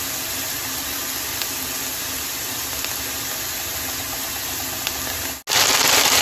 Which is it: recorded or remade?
recorded